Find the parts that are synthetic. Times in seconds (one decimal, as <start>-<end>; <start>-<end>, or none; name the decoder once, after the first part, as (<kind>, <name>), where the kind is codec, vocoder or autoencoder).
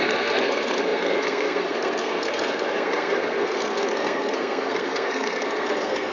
0.0-6.1 (codec, SNAC)